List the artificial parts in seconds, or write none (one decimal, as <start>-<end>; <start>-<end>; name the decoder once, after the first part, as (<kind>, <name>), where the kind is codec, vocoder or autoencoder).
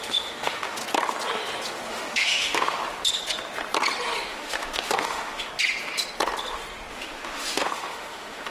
0.0-0.8 (autoencoder, DAC-VAE); 1.9-2.8; 4.3-5.5; 6.9-8.5